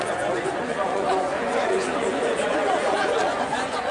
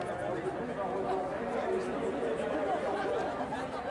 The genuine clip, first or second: second